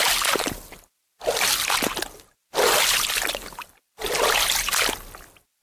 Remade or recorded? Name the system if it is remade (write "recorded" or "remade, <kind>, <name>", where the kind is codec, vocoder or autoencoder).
recorded